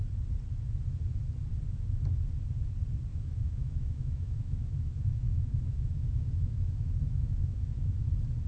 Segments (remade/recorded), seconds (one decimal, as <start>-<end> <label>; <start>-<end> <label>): 0.0-3.1 recorded; 3.1-7.9 remade; 7.9-8.5 recorded